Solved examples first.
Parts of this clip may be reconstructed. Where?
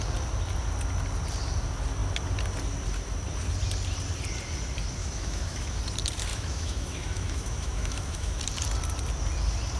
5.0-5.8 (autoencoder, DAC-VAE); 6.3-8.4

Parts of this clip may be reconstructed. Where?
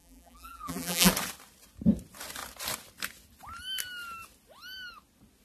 0.0-1.1 (vocoder, BigVGAN v2)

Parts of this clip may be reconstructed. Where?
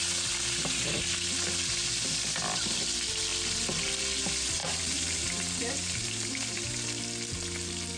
4.6-7.0 (vocoder, BigVGAN v2)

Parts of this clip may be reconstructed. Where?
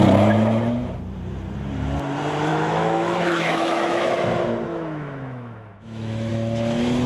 2.5-4.1 (autoencoder, DAC-VAE); 4.7-6.3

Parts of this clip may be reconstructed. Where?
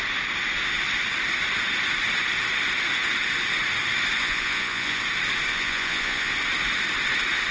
4.2-5.0 (vocoder, Vocos); 5.5-6.3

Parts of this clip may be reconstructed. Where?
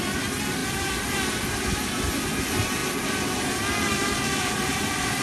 none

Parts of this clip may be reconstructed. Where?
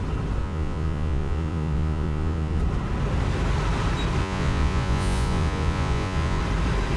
0.4-2.6 (vocoder, Vocos); 4.2-6.4